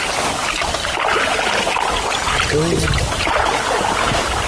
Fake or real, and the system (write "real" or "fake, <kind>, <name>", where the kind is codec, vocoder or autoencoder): real